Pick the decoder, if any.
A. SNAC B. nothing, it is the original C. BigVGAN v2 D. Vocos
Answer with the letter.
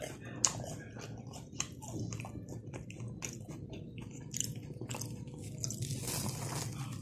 B